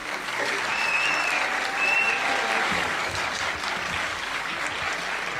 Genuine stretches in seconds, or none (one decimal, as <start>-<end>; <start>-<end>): 0.6-2.6; 3.5-4.1; 4.6-5.4